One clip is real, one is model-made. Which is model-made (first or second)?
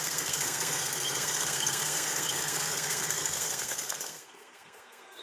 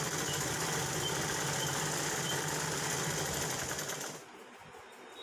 first